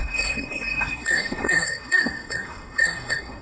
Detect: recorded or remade remade